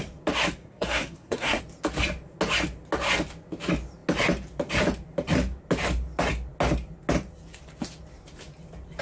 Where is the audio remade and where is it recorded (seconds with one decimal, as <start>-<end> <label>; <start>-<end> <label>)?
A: 0.0-0.6 recorded; 0.6-1.6 remade; 1.6-9.0 recorded